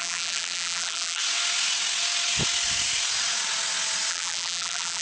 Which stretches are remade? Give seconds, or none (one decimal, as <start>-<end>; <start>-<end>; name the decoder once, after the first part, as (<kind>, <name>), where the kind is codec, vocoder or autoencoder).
0.0-1.2 (vocoder, BigVGAN v2); 4.1-5.0